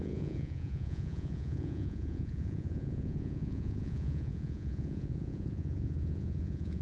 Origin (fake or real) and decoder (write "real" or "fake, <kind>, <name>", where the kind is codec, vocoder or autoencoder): fake, vocoder, Vocos